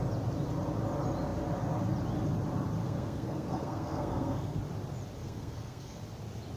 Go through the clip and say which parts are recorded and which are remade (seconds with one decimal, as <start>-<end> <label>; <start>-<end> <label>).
0.0-2.8 recorded; 2.8-4.6 remade; 4.6-5.2 recorded; 5.2-6.0 remade; 6.0-6.6 recorded